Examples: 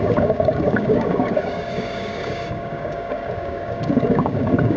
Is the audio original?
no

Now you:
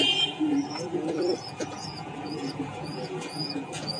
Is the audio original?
no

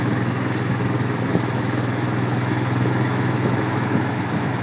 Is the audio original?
no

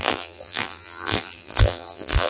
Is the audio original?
no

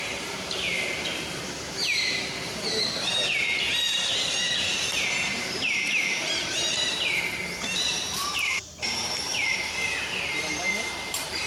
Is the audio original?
no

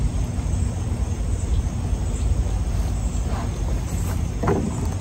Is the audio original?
yes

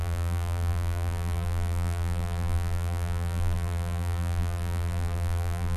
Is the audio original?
no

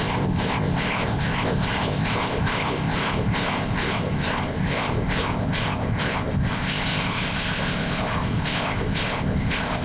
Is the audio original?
no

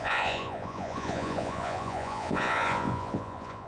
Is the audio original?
no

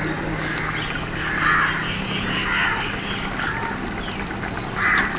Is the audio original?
yes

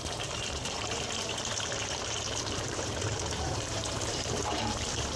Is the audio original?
no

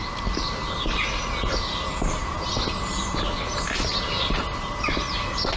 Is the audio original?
yes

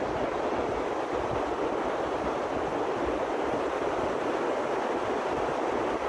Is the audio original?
yes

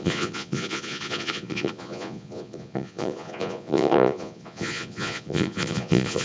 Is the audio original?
no